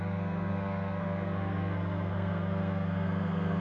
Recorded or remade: remade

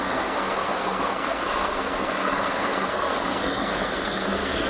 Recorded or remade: remade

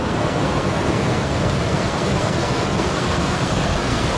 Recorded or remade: remade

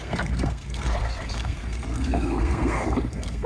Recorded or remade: remade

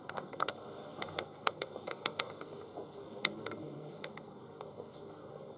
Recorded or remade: remade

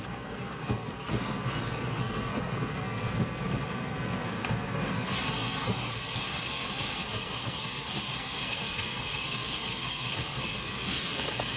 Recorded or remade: remade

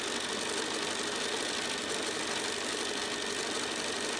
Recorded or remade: recorded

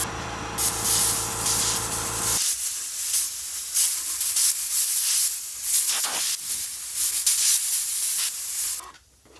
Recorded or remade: recorded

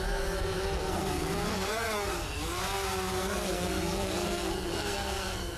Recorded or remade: remade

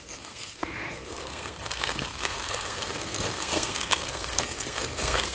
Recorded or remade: remade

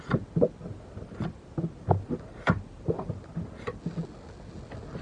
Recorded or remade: recorded